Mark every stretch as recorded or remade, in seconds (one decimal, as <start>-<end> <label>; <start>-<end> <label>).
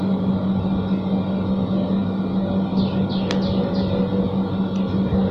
0.0-5.3 recorded